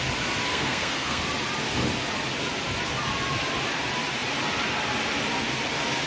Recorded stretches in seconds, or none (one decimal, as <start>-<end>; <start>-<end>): 0.0-0.5; 1.2-6.1